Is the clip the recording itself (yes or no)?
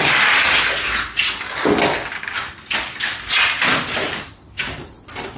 yes